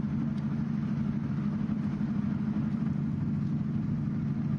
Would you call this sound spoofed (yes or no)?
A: no